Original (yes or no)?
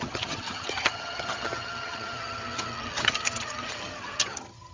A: no